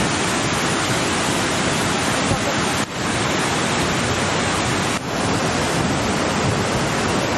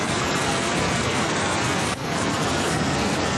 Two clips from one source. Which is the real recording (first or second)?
first